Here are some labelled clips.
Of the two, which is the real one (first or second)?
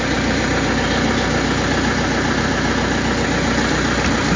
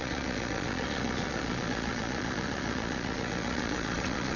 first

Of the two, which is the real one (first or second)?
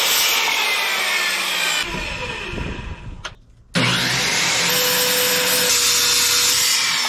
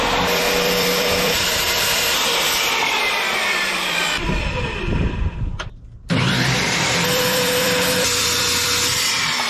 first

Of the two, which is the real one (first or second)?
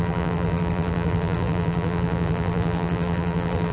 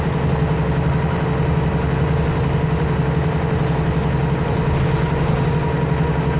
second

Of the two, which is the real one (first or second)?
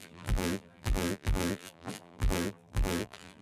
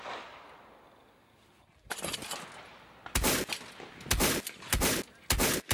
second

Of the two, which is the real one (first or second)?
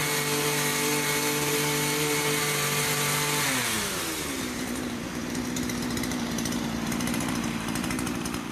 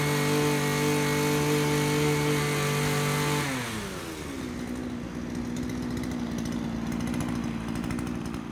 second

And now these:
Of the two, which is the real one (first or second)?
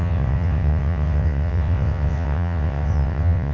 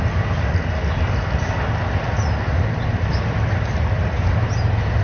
second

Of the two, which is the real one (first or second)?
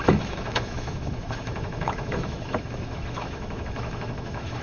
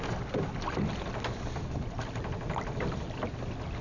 second